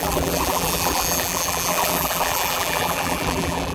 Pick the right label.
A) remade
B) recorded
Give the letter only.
A